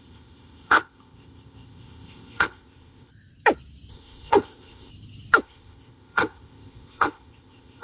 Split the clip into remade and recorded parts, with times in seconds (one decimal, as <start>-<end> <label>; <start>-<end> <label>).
0.0-3.1 remade; 3.1-3.9 recorded; 3.9-4.9 remade; 4.9-5.4 recorded; 5.4-7.8 remade

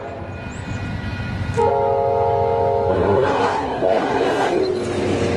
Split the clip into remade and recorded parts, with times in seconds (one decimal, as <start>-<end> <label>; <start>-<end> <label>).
0.0-2.9 recorded; 2.9-4.6 remade; 4.6-5.4 recorded

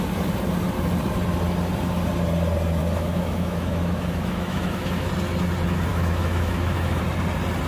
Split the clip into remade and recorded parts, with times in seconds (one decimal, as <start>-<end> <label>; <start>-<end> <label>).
0.0-2.8 recorded; 2.8-5.1 remade; 5.1-5.9 recorded; 5.9-7.0 remade; 7.0-7.7 recorded

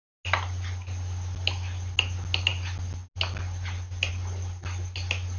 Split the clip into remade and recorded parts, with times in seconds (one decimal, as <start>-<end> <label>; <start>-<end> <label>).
0.0-5.4 recorded

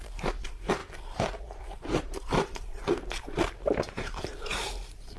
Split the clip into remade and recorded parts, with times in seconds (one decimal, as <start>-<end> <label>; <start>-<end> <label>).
0.0-0.8 remade; 0.8-1.4 recorded; 1.4-5.2 remade